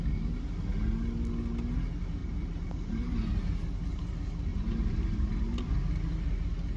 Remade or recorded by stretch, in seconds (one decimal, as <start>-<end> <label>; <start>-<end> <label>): 0.0-2.2 recorded; 2.2-4.0 remade; 4.0-4.5 recorded; 4.5-5.7 remade; 5.7-6.8 recorded